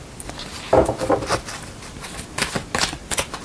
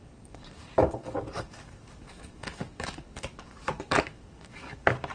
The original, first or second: first